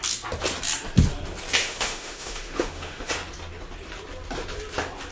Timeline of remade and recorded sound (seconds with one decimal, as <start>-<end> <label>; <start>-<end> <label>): 0.0-1.6 recorded; 1.6-3.1 remade; 3.1-5.1 recorded